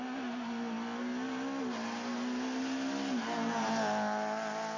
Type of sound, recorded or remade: recorded